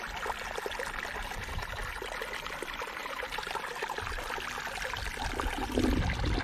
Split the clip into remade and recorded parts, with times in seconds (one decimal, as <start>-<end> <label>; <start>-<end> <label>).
0.0-1.2 recorded; 1.2-1.8 remade; 1.8-3.0 recorded; 3.0-3.6 remade; 3.6-6.4 recorded